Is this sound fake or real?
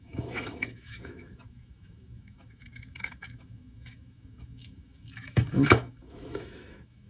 fake